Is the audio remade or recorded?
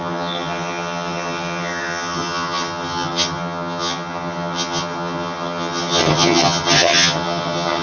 remade